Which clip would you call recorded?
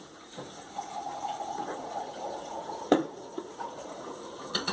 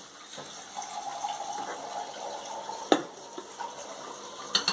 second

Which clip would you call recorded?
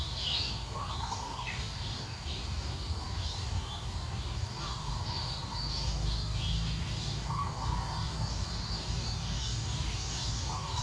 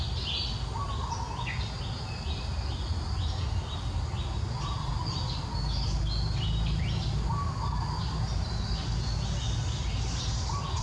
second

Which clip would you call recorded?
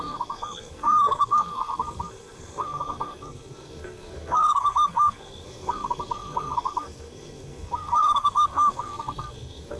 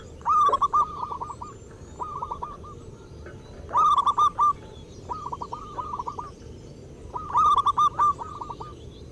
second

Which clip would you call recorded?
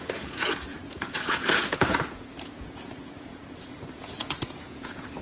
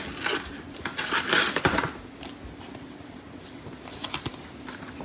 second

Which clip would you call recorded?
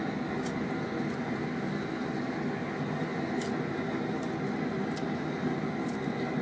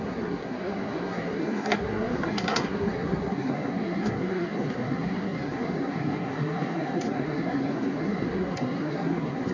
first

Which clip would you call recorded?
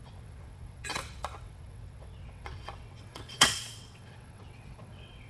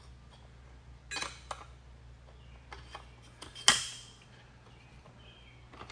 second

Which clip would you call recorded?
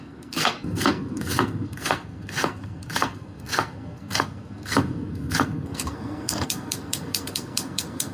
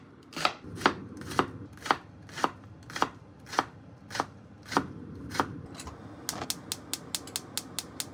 second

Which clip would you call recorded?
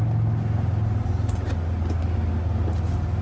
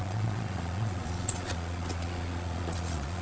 first